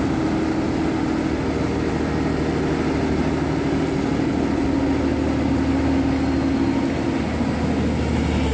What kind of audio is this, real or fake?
real